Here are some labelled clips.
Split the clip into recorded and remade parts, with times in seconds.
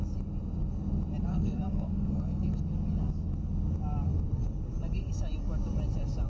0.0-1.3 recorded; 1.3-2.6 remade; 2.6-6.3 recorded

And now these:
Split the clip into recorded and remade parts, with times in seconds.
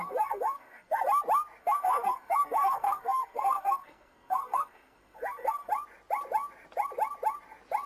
0.0-1.1 remade; 1.1-1.6 recorded; 1.6-5.7 remade; 5.7-7.9 recorded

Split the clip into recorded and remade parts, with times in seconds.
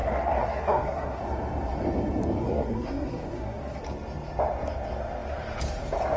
0.0-1.2 remade; 1.2-2.4 recorded; 2.4-3.8 remade; 3.8-6.2 recorded